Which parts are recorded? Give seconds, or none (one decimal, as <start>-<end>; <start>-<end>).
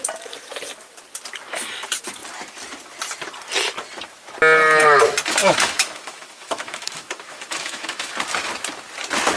0.0-5.4; 8.1-9.4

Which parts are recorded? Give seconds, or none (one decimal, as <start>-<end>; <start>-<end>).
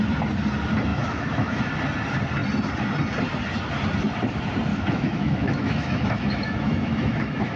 0.0-0.9; 1.6-4.7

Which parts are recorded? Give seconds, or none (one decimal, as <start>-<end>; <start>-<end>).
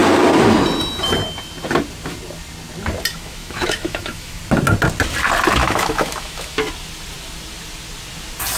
0.0-3.1; 4.4-5.6; 6.6-8.6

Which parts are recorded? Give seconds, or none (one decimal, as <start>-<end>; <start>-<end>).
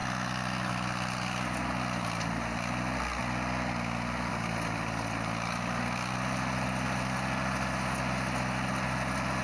0.0-9.4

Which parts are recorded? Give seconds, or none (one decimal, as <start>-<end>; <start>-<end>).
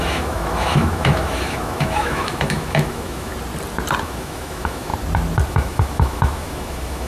3.3-4.0; 4.9-5.5